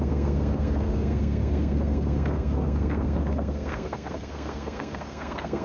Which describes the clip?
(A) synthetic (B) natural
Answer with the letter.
A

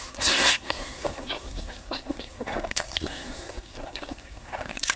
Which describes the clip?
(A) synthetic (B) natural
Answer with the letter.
A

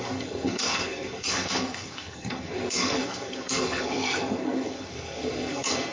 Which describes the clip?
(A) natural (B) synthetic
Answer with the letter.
B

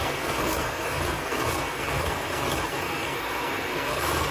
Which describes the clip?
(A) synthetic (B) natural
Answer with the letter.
A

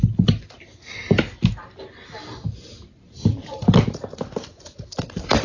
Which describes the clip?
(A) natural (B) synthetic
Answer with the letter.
A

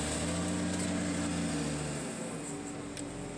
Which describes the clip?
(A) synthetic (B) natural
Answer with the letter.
B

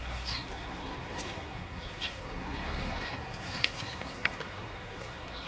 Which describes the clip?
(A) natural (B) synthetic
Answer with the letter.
B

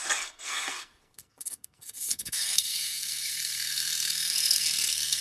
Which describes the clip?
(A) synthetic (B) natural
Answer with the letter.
A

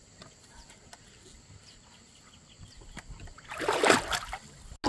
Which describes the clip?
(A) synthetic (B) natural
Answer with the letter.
B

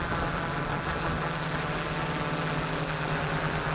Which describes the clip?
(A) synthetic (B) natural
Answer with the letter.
B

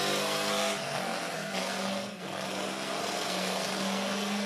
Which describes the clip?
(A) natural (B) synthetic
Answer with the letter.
B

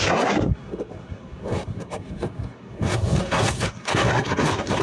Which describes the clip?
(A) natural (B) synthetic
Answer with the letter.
B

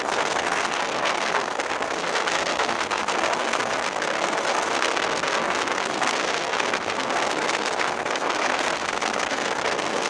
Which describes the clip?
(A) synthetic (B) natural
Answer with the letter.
A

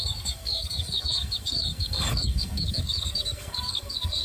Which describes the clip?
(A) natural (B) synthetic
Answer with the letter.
B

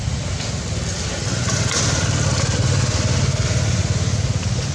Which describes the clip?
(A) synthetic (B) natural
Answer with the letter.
B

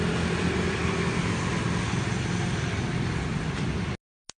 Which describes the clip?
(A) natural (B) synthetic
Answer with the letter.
A